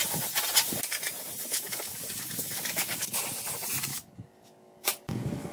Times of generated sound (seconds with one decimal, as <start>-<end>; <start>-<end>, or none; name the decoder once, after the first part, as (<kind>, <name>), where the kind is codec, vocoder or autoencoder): 1.5-3.2 (codec, DAC); 3.9-5.5